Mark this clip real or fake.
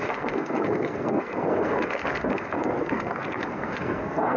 fake